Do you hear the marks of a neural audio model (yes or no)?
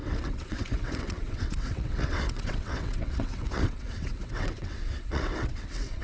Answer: yes